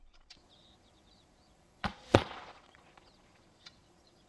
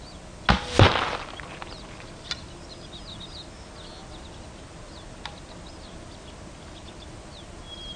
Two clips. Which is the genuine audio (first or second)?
second